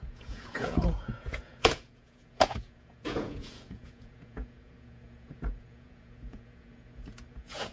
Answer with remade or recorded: remade